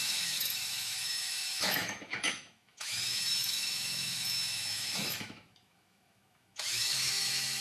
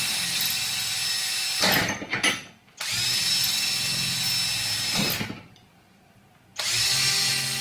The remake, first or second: first